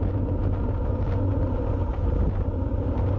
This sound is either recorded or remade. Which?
recorded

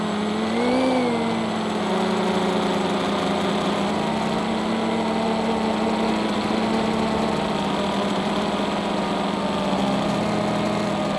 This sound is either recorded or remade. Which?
recorded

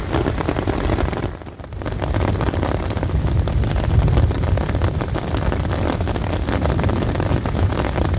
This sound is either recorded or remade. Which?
recorded